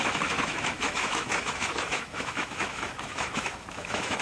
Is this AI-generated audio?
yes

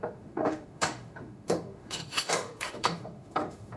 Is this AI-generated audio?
yes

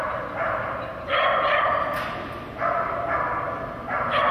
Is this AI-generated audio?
no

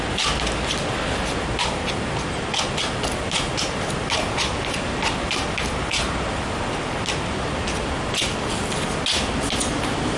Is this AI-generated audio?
no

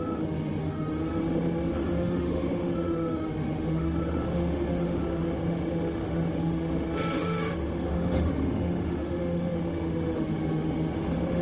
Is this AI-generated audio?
yes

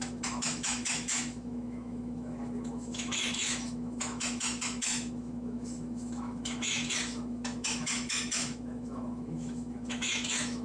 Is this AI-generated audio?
yes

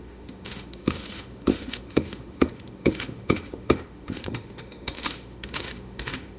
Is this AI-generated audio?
yes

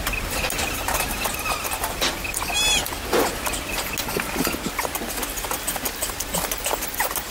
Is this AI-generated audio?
no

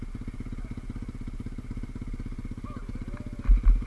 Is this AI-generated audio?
no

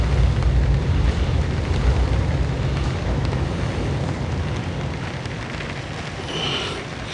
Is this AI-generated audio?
no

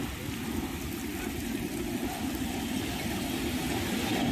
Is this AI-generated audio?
no